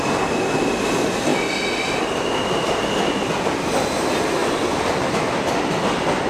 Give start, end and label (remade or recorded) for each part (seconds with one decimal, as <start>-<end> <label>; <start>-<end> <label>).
0.0-6.3 recorded